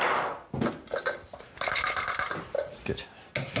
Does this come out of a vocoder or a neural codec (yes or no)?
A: no